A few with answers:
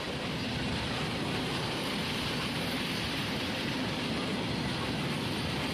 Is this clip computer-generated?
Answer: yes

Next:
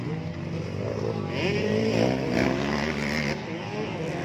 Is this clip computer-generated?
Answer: no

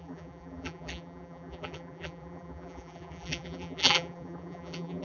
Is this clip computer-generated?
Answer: yes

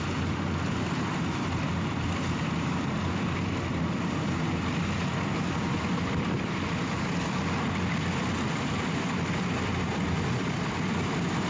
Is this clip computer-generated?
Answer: yes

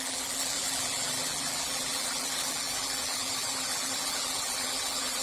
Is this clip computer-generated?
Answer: yes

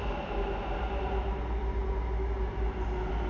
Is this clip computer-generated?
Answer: no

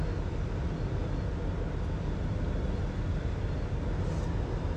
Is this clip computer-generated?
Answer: no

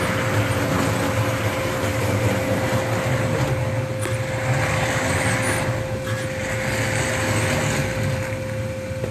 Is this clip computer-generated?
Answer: no